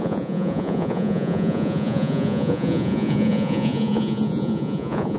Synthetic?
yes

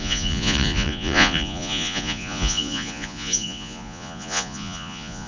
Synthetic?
yes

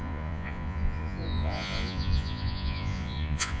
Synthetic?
yes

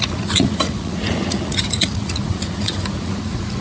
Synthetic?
yes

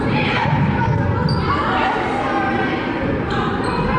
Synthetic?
no